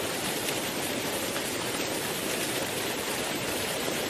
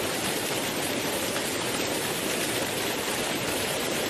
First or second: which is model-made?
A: first